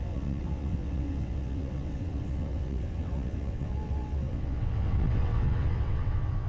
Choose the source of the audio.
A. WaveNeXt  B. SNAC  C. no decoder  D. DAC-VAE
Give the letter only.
A